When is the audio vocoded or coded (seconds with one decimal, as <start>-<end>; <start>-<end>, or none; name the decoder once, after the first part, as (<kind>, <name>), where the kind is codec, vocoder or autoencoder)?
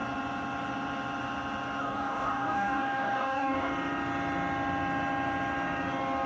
1.8-3.7 (codec, DAC)